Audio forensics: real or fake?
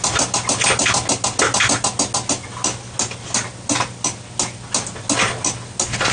real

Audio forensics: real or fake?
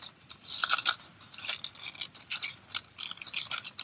real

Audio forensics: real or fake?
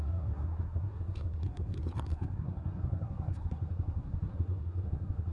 fake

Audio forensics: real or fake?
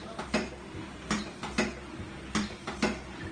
real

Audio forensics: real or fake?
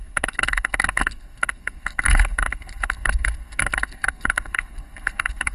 fake